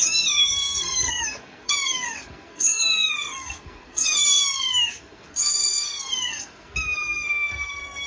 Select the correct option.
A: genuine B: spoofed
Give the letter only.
B